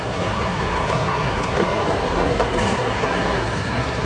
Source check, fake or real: fake